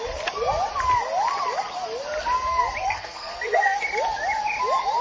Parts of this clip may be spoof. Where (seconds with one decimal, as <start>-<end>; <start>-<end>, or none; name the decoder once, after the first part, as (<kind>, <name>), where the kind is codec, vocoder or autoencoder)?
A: 2.8-3.8 (codec, SNAC)